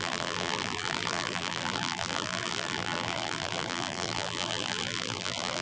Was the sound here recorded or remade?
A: remade